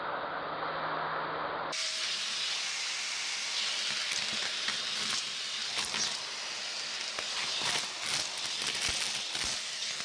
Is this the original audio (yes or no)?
yes